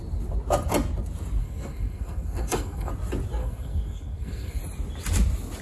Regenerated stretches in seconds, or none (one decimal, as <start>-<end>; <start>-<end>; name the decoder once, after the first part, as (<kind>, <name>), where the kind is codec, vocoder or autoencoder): 1.4-2.9 (codec, SNAC); 3.4-4.6